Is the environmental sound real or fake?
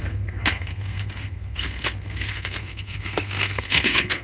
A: fake